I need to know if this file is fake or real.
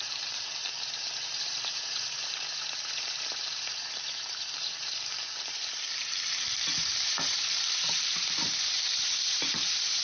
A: fake